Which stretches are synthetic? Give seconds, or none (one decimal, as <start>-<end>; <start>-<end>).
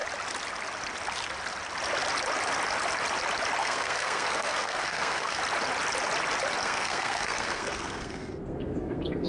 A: 3.6-5.4; 6.6-9.3